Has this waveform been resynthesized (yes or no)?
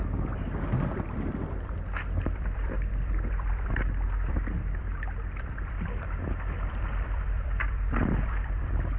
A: yes